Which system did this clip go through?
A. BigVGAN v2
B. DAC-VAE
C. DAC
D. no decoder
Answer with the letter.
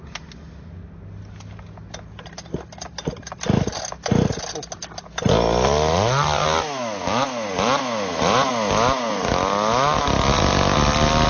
D